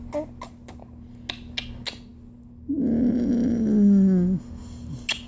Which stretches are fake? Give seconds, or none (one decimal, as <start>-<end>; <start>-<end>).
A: none